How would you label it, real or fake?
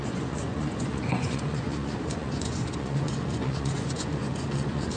fake